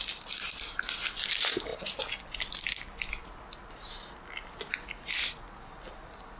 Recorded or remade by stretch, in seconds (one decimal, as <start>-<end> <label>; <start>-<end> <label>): 0.0-6.4 recorded